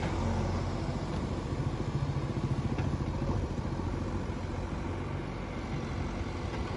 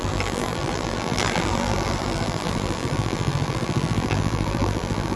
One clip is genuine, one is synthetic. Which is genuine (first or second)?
first